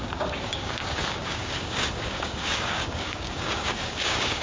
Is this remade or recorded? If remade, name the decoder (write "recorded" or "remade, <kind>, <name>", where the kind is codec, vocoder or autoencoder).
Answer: remade, codec, DAC